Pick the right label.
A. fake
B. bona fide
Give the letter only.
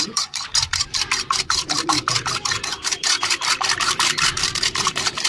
A